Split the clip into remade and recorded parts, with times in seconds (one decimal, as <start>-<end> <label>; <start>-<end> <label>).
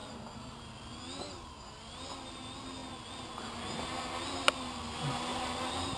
0.0-0.7 remade; 0.7-5.3 recorded; 5.3-6.0 remade